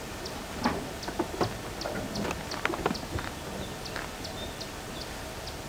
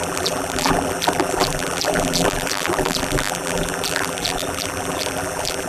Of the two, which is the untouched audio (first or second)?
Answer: first